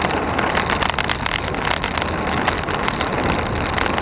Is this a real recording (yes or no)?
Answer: yes